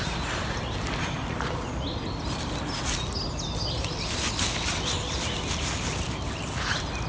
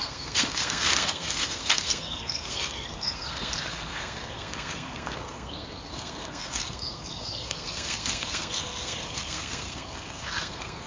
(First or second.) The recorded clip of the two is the first